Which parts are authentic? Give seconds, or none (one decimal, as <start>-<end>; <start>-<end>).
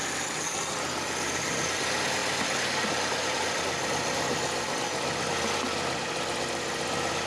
0.0-7.3